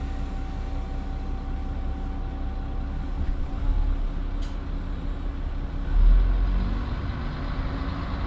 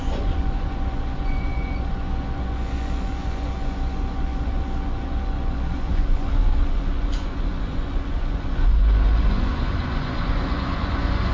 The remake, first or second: second